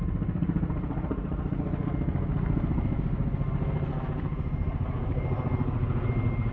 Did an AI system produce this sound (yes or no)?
no